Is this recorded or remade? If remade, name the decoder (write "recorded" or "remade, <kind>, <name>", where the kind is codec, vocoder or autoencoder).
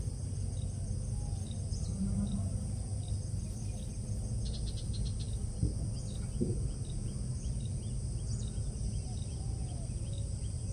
recorded